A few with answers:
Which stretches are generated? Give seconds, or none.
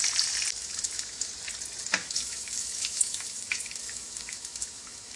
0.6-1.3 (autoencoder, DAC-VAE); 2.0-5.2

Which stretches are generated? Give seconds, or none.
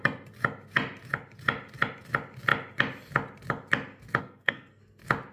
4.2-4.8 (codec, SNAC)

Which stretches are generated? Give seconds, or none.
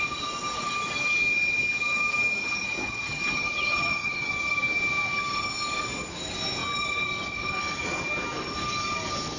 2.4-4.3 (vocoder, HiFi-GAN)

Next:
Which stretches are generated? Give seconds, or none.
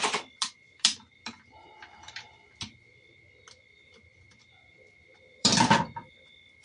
0.0-5.5 (vocoder, BigVGAN v2)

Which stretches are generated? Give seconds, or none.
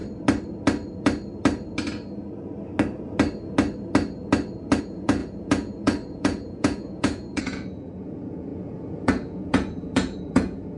4.8-10.8 (vocoder, Vocos)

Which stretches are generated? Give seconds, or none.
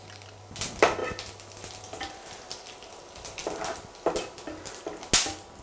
none